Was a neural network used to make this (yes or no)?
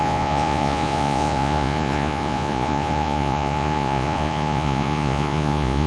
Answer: yes